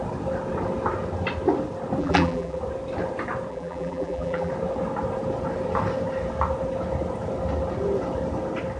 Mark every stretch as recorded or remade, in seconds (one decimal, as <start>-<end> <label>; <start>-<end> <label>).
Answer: 0.0-2.0 recorded; 2.0-2.6 remade; 2.6-3.5 recorded; 3.5-4.5 remade; 4.5-8.8 recorded